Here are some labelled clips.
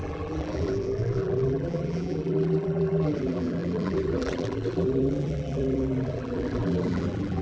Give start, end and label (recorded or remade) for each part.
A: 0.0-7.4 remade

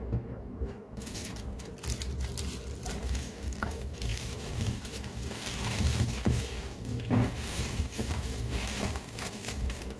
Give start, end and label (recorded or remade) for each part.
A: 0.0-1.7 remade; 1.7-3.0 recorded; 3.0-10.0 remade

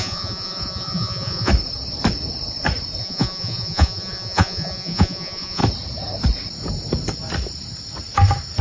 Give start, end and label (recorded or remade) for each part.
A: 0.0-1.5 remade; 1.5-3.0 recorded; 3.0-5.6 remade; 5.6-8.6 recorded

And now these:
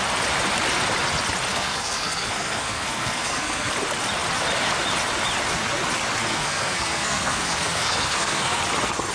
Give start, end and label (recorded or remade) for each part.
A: 0.0-1.5 recorded; 1.5-3.7 remade; 3.7-6.2 recorded; 6.2-8.6 remade; 8.6-9.1 recorded

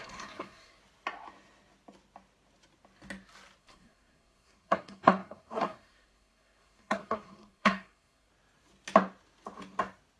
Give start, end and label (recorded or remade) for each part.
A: 0.0-0.8 remade; 0.8-3.6 recorded; 3.6-8.3 remade; 8.3-10.2 recorded

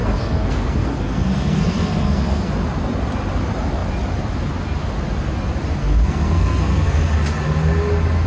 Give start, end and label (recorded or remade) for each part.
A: 0.0-2.5 remade; 2.5-5.8 recorded; 5.8-7.0 remade; 7.0-8.3 recorded

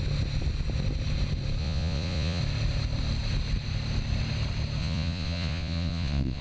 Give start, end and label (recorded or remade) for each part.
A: 0.0-1.6 recorded; 1.6-2.4 remade; 2.4-4.8 recorded; 4.8-6.4 remade

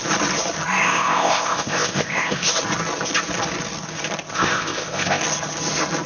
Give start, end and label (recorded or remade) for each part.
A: 0.0-0.8 recorded; 0.8-2.5 remade; 2.5-4.3 recorded; 4.3-5.2 remade; 5.2-6.1 recorded